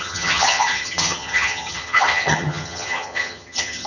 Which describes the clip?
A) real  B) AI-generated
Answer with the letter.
B